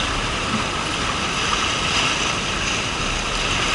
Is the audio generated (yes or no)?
no